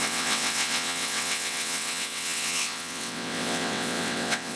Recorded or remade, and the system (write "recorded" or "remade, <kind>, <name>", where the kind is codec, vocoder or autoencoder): remade, vocoder, WaveNeXt